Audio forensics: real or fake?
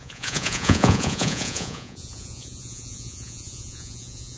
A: fake